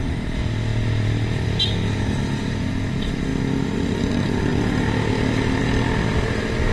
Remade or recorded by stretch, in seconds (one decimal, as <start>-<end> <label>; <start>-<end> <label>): 0.0-6.7 recorded